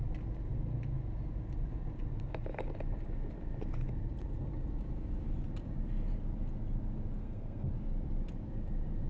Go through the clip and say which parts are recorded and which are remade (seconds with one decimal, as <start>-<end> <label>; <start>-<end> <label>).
0.0-7.2 recorded; 7.2-7.7 remade; 7.7-9.1 recorded